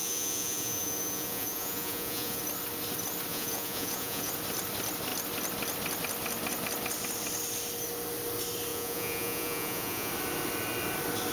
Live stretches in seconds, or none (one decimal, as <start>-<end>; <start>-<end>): 2.4-3.3; 4.3-8.7; 10.1-11.3